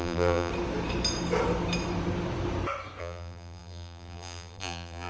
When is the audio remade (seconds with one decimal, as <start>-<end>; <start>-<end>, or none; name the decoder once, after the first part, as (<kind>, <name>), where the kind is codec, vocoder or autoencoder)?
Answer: 0.0-0.5 (vocoder, BigVGAN v2); 3.0-5.1